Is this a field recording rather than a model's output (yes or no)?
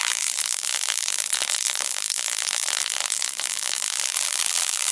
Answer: no